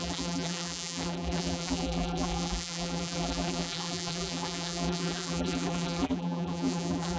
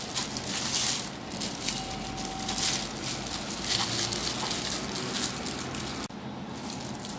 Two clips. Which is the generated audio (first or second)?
first